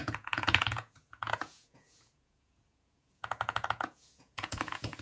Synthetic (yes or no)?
yes